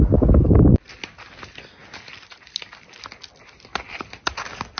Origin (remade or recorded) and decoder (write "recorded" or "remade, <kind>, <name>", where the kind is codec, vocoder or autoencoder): recorded